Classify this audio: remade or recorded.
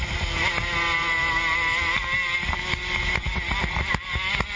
recorded